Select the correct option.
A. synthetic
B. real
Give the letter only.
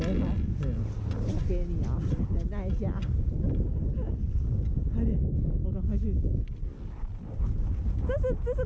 B